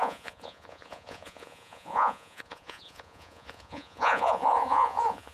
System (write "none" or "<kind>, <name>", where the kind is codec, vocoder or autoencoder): vocoder, Vocos